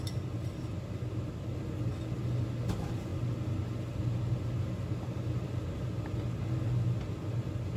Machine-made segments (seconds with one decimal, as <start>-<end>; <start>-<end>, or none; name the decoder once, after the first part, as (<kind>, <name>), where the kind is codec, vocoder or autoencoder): none